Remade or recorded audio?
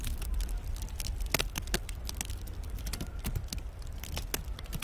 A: recorded